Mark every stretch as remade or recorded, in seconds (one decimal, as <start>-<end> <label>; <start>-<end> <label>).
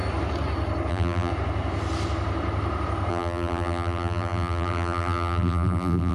0.0-0.9 recorded; 0.9-1.3 remade; 1.3-3.1 recorded; 3.1-6.1 remade